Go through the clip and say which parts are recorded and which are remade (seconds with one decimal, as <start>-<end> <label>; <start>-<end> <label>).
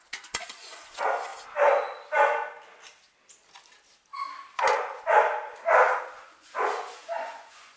0.0-1.3 remade; 1.3-6.0 recorded; 6.0-7.8 remade